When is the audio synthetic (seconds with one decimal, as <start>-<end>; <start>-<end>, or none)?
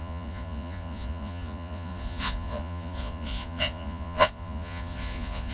0.0-5.5